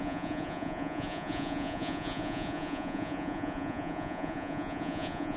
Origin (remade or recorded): remade